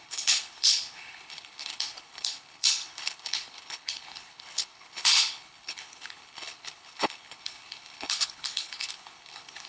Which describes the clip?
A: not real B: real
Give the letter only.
A